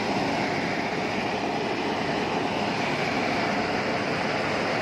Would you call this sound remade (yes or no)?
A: no